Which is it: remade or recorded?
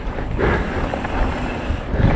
recorded